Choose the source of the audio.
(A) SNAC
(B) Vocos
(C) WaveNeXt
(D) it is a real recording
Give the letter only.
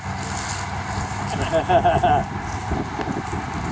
D